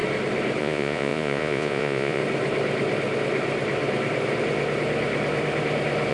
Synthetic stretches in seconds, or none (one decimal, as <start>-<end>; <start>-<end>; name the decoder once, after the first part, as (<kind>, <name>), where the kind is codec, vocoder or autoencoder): 0.6-2.2 (vocoder, Vocos)